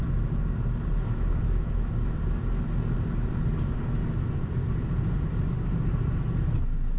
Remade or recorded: recorded